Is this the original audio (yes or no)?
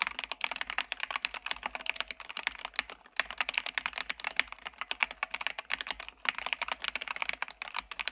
yes